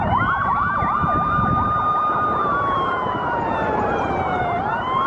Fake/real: fake